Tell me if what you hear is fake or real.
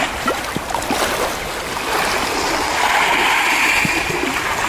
real